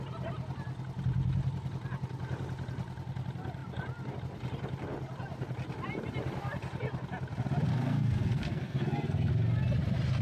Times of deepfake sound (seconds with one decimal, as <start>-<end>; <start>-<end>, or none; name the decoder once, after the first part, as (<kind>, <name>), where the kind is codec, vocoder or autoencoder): 7.7-9.3 (codec, SNAC)